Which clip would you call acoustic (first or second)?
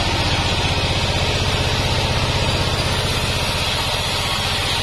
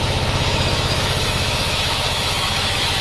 first